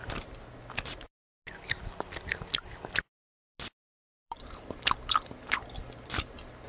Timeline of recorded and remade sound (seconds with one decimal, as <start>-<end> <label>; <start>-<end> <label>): 0.0-1.3 remade; 1.3-4.0 recorded; 4.0-4.5 remade; 4.5-6.7 recorded